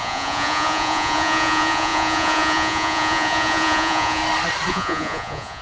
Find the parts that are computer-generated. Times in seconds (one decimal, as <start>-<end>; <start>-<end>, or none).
0.0-4.2; 4.7-5.6